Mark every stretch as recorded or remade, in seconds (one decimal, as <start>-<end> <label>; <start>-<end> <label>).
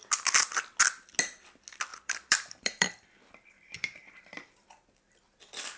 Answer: 0.0-1.9 recorded; 1.9-5.8 remade